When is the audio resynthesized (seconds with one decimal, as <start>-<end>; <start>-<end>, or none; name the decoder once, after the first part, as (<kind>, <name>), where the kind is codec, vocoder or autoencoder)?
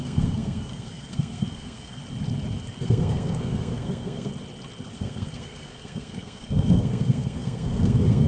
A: 0.0-2.0 (codec, SNAC); 2.8-4.3; 4.9-8.3